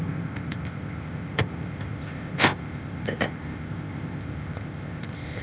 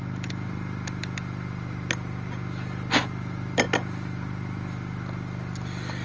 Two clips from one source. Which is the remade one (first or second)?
first